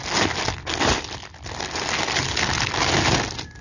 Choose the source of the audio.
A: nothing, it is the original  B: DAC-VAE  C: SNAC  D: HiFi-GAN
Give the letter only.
A